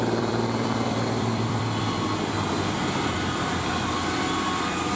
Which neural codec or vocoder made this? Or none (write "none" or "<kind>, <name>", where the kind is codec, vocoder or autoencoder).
vocoder, BigVGAN v2